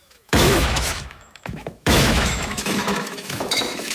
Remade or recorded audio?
remade